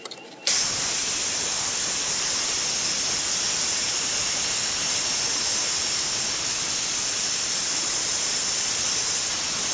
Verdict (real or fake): real